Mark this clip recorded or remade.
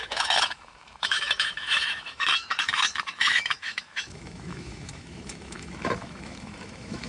remade